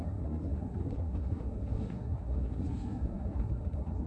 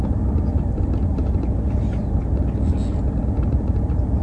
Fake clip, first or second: first